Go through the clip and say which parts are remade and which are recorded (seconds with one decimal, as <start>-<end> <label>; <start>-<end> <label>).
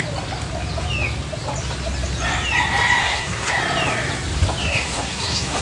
0.0-3.0 recorded; 3.0-3.6 remade; 3.6-4.6 recorded; 4.6-5.6 remade